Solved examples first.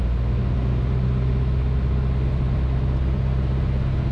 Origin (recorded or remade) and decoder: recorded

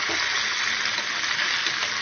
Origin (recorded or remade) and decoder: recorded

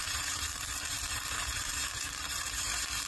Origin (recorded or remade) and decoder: remade, vocoder, BigVGAN v2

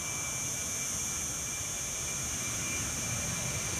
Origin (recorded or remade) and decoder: recorded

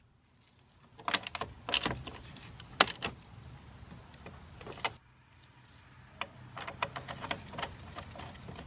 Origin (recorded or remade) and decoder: recorded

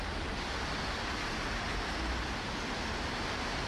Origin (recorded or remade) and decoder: recorded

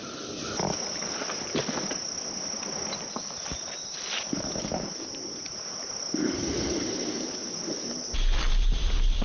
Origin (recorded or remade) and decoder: recorded